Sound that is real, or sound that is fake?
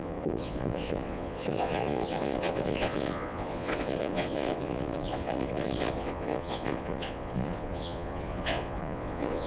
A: fake